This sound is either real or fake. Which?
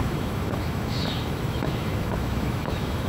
fake